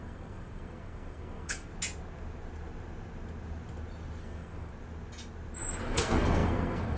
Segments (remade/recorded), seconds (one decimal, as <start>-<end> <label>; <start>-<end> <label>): 0.0-1.7 remade; 1.7-4.2 recorded; 4.2-4.7 remade; 4.7-5.8 recorded; 5.8-7.0 remade